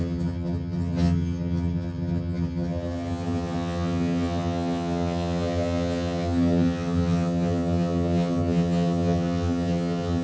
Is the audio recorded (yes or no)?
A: no